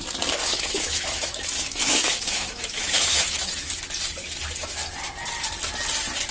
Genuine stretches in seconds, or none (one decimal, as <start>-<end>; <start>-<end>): 0.0-0.4; 3.7-6.3